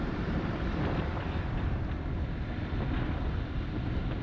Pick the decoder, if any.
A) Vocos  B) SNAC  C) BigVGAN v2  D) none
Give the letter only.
C